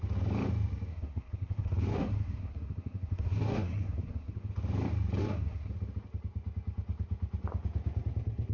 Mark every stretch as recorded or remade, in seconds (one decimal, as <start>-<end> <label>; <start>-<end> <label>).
0.0-0.9 recorded; 0.9-4.5 remade; 4.5-5.2 recorded; 5.2-5.7 remade; 5.7-8.5 recorded